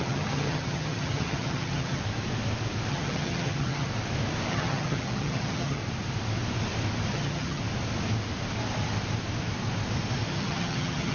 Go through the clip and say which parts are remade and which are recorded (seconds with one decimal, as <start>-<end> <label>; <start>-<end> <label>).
0.0-2.0 remade; 2.0-2.9 recorded; 2.9-3.9 remade; 3.9-4.5 recorded; 4.5-5.8 remade; 5.8-7.1 recorded; 7.1-7.6 remade; 7.6-10.3 recorded; 10.3-11.1 remade